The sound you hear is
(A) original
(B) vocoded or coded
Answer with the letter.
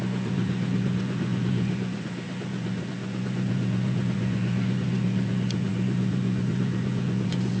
B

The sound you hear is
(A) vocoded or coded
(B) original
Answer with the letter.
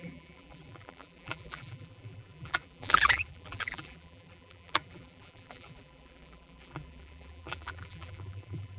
A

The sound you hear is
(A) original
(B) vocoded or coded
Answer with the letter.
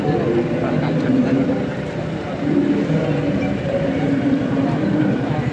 A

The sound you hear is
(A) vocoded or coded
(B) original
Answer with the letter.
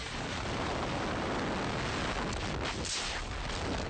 B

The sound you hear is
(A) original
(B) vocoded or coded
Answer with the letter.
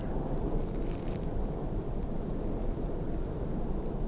A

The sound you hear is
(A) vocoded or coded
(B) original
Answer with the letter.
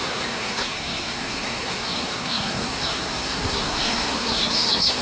A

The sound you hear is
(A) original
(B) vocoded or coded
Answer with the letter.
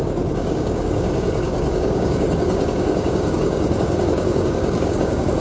B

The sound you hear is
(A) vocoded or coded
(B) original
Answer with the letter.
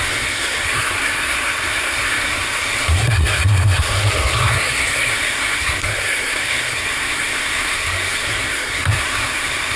A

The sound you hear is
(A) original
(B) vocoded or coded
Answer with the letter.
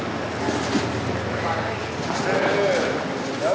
A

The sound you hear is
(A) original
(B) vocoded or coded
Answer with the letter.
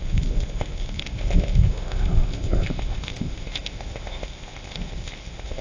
B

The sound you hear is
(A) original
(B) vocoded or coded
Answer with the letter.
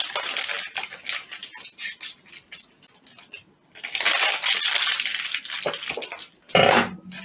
A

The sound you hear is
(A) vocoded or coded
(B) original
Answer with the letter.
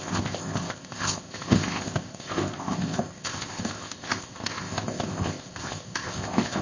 A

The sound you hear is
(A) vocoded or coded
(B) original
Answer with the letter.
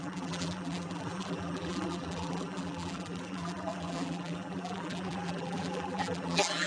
A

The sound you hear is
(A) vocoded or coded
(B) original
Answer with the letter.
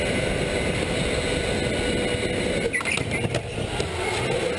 B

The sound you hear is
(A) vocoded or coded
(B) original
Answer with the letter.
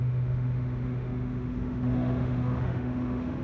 A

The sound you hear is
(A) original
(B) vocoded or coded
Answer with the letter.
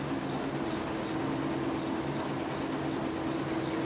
A